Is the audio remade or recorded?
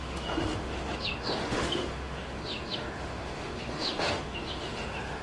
remade